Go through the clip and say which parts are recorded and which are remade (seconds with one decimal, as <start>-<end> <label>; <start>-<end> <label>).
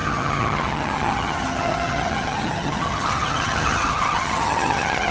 0.0-5.1 remade